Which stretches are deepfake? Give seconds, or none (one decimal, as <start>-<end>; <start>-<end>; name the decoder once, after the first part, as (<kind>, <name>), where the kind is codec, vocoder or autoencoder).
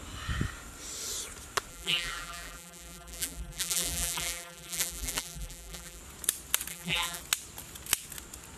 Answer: 1.7-6.0 (vocoder, BigVGAN v2); 6.7-7.2